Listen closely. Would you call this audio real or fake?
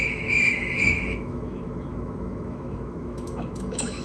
fake